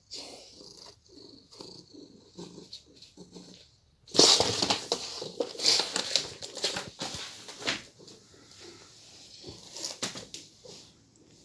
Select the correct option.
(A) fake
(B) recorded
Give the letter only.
B